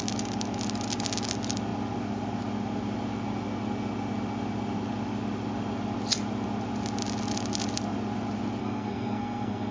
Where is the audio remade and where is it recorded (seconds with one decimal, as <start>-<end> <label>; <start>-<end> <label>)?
0.0-8.6 recorded; 8.6-9.7 remade